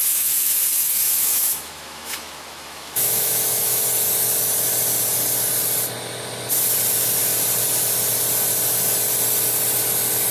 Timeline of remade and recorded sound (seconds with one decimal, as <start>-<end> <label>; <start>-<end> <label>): 0.0-3.8 remade; 3.8-10.3 recorded